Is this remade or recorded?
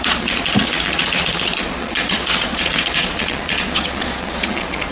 remade